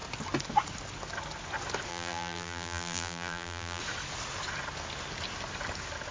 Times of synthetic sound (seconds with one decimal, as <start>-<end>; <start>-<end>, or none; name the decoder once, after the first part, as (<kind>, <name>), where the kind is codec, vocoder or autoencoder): 1.9-3.8 (vocoder, BigVGAN v2)